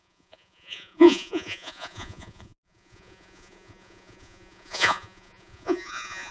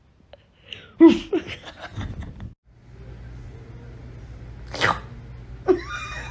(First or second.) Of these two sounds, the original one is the second